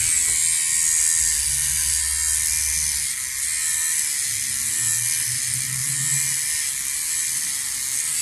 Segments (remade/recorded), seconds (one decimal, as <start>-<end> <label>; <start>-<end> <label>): 0.0-8.2 recorded